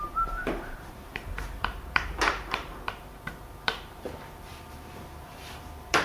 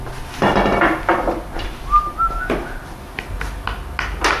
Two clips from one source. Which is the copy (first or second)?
first